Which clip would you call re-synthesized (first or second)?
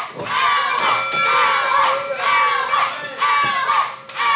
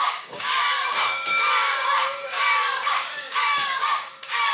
second